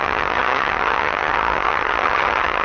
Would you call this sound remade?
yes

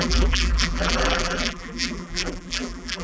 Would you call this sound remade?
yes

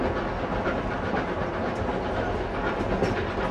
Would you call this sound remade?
no